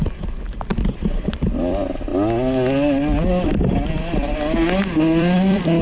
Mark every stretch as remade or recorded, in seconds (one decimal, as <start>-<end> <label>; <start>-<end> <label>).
0.0-2.1 remade; 2.1-4.8 recorded; 4.8-5.8 remade